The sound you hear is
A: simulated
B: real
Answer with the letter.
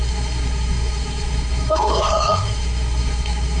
A